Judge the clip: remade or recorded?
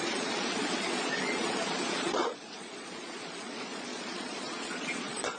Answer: remade